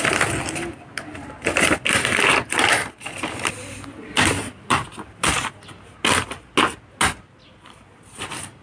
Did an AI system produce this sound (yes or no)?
no